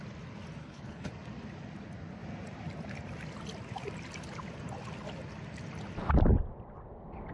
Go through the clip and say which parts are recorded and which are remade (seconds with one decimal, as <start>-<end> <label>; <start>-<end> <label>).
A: 0.0-0.6 recorded; 0.6-1.1 remade; 1.1-7.3 recorded